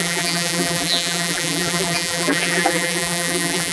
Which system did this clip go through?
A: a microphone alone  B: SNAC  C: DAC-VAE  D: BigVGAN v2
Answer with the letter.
D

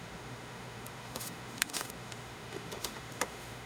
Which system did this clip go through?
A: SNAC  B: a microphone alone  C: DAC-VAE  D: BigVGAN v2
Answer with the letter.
C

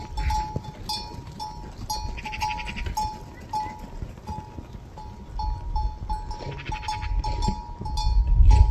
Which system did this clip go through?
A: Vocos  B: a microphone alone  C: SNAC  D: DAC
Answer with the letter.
B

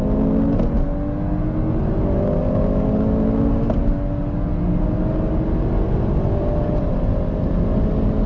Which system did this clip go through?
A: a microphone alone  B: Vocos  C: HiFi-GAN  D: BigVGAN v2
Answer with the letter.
A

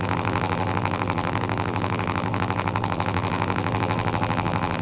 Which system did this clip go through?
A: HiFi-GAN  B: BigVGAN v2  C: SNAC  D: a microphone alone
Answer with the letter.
B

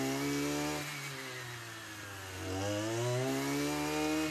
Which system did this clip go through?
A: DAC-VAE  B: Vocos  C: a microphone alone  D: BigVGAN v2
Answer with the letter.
C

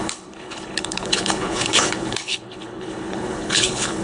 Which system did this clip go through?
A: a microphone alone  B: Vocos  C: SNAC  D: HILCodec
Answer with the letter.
D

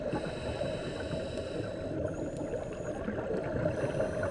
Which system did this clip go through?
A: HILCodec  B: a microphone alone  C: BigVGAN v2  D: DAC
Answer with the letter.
B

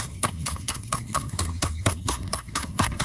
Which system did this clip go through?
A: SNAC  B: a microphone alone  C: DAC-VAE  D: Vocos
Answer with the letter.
A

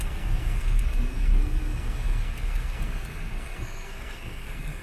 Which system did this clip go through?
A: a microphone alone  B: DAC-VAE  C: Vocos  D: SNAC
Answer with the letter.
D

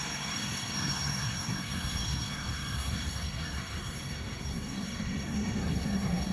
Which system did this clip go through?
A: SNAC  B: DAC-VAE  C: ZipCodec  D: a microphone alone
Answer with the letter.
A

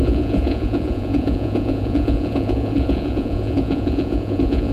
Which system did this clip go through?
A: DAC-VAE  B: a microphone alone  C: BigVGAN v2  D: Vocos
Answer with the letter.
D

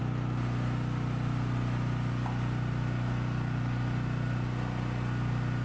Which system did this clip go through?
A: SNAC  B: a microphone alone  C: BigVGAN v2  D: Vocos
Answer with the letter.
B